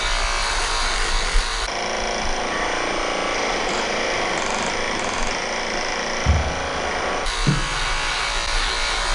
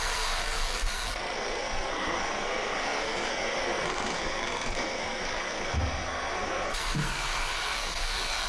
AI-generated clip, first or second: second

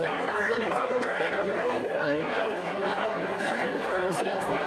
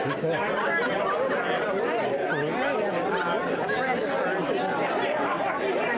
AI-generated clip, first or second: first